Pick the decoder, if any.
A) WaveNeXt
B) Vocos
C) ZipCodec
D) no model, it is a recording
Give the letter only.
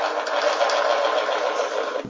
D